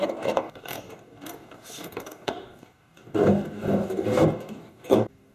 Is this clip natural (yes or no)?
no